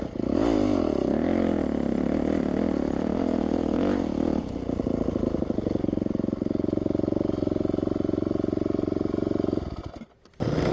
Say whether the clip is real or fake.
real